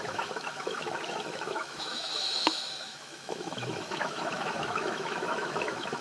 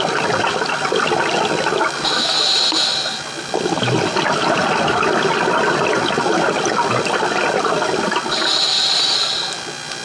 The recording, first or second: second